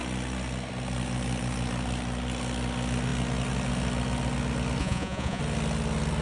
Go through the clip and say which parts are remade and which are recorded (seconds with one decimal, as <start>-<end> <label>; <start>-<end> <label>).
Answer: 0.0-4.8 recorded; 4.8-5.4 remade; 5.4-6.2 recorded